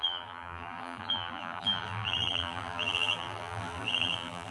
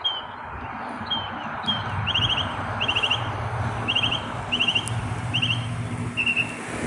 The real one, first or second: second